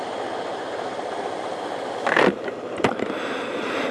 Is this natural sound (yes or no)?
no